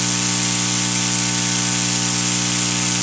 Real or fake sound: real